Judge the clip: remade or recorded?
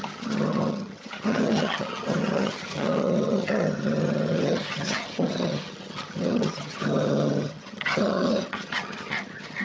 remade